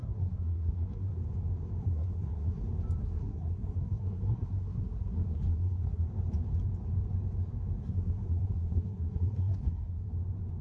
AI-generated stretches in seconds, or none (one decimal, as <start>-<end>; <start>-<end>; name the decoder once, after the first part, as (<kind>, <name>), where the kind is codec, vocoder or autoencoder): 0.0-1.1 (codec, SNAC); 1.8-2.6; 3.0-6.0; 7.8-10.1